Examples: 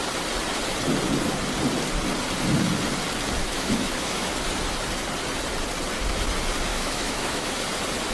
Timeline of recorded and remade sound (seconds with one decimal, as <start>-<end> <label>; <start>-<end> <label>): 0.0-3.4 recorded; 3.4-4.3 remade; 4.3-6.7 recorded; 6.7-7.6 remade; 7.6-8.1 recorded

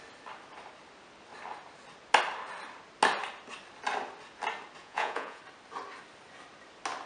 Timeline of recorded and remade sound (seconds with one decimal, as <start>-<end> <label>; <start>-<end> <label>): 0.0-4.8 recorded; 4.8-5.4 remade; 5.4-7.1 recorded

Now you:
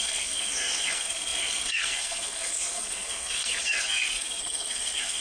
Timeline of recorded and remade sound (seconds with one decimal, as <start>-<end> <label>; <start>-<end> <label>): 0.0-5.2 remade

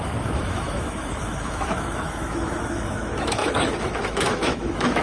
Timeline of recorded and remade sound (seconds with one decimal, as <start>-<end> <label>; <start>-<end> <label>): 0.0-5.0 remade